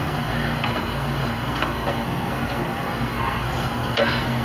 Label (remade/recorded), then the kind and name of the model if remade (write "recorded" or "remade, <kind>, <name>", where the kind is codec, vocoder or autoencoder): remade, codec, SNAC